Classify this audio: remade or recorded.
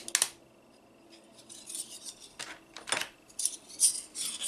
recorded